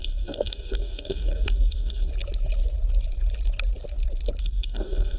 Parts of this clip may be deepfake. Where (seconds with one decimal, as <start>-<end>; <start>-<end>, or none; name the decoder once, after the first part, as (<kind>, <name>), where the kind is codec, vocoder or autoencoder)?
0.0-2.1 (codec, DAC); 4.4-5.2